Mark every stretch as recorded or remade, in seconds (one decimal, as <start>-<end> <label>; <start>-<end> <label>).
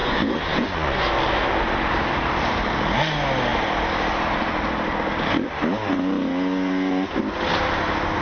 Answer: 0.0-1.0 remade; 1.0-8.2 recorded